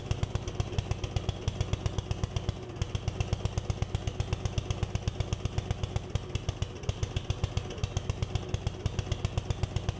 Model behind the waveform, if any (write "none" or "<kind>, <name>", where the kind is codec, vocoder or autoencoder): none